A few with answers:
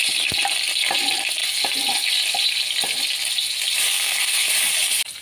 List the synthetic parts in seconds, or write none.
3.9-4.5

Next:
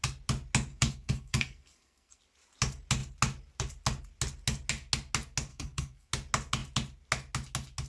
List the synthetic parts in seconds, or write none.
0.7-2.2; 5.5-6.1

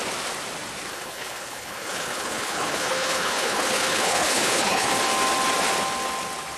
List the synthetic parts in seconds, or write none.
0.9-4.9

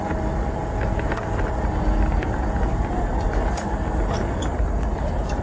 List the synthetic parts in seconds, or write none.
none

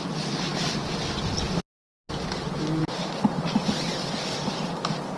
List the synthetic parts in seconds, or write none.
0.5-1.4; 2.8-4.8